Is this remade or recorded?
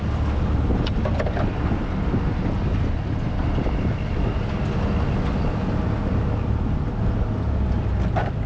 recorded